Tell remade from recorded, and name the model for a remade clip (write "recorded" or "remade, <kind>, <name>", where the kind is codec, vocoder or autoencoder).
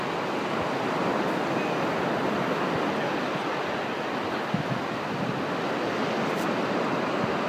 recorded